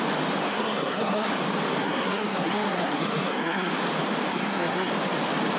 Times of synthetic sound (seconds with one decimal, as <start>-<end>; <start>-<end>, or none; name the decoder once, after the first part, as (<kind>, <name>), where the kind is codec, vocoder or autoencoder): 0.5-1.3 (codec, SNAC); 1.8-3.7; 4.3-4.9